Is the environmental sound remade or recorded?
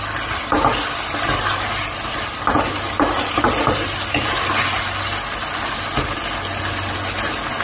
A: recorded